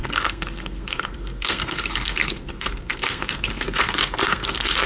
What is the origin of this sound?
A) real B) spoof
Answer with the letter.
B